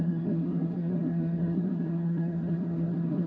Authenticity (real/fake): fake